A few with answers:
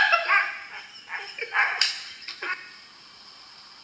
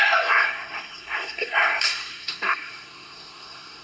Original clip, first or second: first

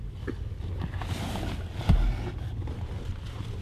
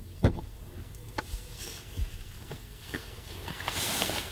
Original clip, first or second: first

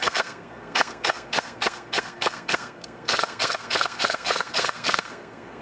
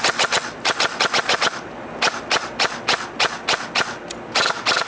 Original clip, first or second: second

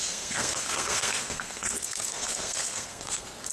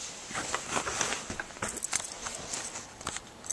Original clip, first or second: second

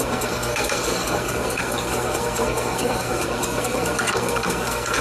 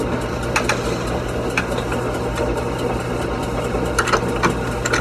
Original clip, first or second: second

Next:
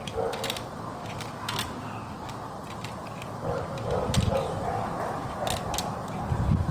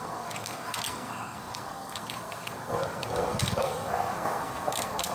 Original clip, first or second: first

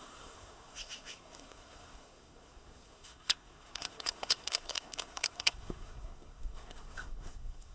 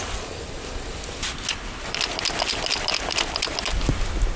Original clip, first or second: second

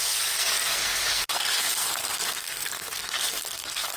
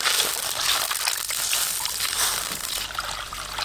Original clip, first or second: second